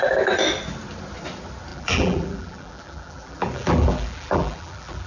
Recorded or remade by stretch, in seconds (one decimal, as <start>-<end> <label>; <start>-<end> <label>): 0.0-1.7 recorded; 1.7-5.1 remade